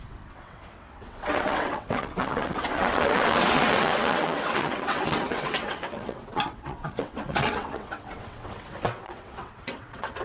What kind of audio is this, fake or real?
fake